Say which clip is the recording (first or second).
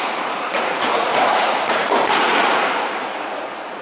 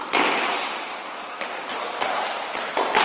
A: second